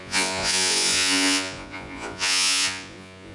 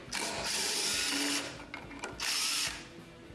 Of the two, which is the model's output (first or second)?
first